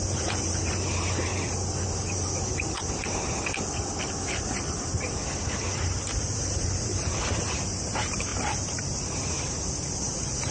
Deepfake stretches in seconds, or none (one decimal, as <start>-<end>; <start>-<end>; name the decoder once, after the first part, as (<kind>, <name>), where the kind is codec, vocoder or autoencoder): 0.0-1.3 (vocoder, BigVGAN v2); 5.7-10.5

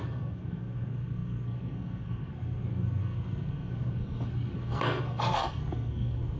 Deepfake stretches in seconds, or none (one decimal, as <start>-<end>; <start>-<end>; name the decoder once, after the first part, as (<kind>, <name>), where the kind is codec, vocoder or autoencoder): 0.0-6.4 (codec, SNAC)